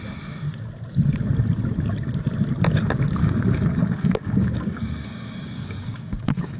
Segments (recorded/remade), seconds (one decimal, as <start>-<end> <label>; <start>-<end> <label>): 0.0-3.2 recorded; 3.2-6.6 remade